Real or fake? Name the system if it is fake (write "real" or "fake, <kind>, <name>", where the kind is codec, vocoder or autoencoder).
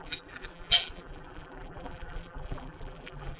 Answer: fake, vocoder, BigVGAN v2